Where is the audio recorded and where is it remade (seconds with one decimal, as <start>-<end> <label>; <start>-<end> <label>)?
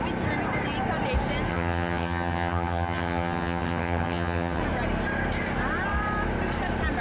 0.0-1.5 recorded; 1.5-4.6 remade; 4.6-7.0 recorded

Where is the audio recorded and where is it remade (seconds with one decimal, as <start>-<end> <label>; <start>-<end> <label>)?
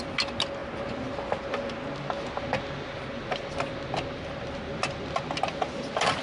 0.0-6.2 recorded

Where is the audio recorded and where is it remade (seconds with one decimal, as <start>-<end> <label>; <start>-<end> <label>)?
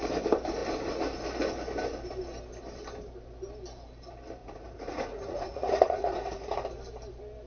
0.0-4.4 recorded; 4.4-6.6 remade; 6.6-7.5 recorded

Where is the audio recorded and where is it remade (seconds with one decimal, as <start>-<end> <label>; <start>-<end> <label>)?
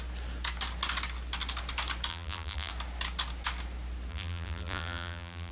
0.0-2.1 recorded; 2.1-2.7 remade; 2.7-4.1 recorded; 4.1-5.5 remade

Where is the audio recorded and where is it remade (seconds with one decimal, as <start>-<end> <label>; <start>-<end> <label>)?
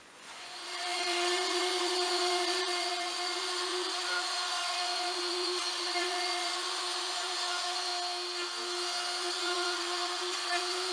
0.0-7.9 remade; 7.9-9.2 recorded; 9.2-10.9 remade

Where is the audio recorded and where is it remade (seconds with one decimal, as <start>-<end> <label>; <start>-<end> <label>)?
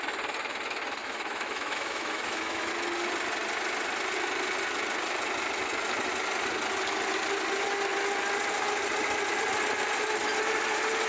0.0-1.0 recorded; 1.0-2.7 remade; 2.7-11.1 recorded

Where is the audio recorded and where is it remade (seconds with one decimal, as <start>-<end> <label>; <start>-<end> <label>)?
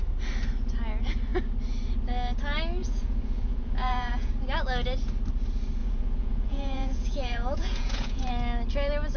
0.0-2.8 recorded; 2.8-4.3 remade; 4.3-5.8 recorded; 5.8-8.3 remade; 8.3-9.2 recorded